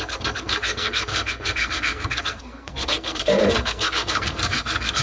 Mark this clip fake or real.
fake